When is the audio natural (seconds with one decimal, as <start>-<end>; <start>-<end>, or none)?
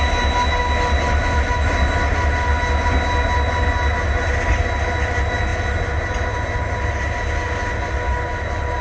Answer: 0.0-8.8